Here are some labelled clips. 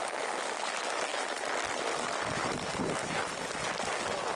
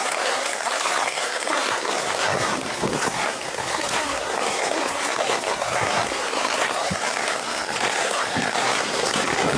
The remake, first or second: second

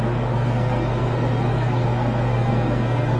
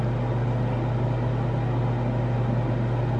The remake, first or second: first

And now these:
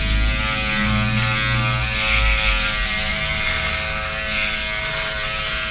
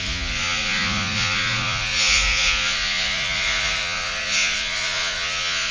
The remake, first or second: second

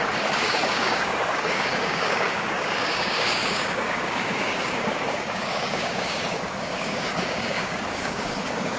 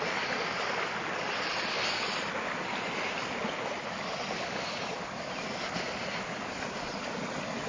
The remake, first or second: first